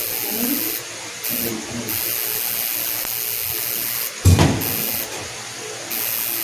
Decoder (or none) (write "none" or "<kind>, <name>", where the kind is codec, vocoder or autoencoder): none